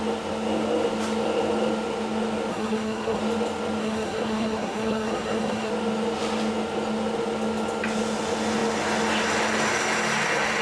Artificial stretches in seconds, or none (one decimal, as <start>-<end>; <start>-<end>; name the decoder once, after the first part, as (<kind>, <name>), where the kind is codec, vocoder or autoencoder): 2.5-3.2 (codec, SNAC); 3.8-5.7